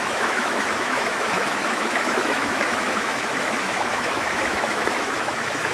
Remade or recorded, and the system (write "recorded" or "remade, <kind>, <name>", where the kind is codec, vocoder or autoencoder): remade, autoencoder, DAC-VAE